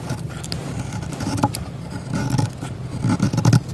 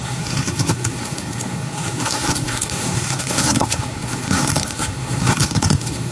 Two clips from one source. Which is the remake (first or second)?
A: second